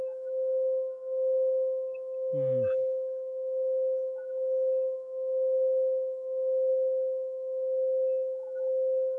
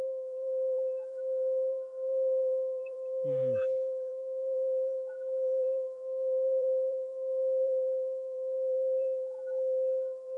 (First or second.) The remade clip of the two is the second